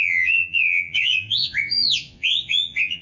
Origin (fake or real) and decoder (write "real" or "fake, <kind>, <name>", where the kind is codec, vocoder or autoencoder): fake, vocoder, Vocos